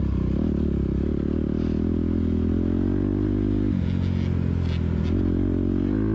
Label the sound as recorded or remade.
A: recorded